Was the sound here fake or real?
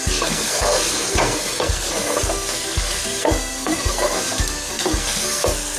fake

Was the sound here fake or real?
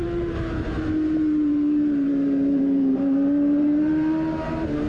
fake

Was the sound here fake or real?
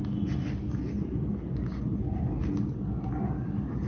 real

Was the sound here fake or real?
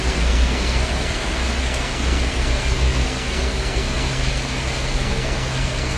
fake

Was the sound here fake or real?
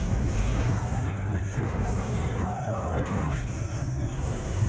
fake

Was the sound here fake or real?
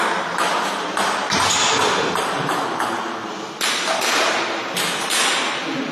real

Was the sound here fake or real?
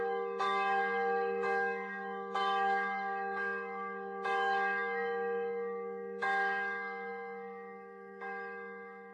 fake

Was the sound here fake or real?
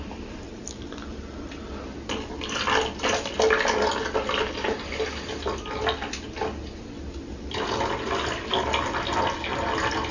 real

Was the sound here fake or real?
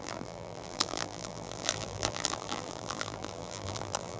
fake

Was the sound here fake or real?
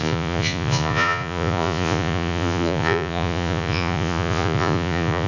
fake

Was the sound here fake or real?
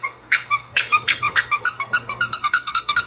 fake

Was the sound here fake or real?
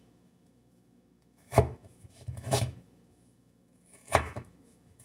fake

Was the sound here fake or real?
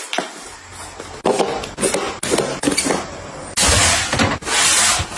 real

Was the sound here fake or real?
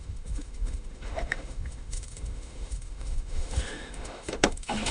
fake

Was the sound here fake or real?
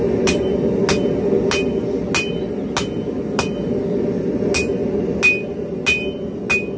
real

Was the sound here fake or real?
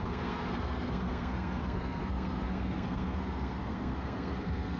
fake